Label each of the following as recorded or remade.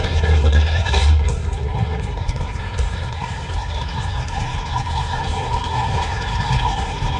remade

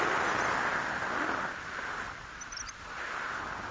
recorded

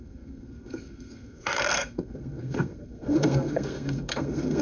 remade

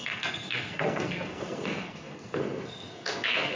remade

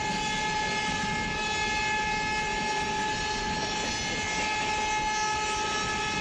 recorded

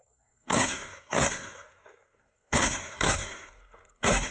remade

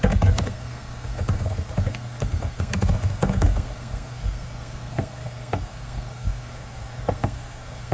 remade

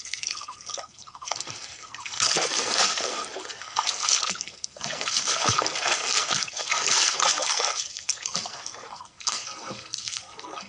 remade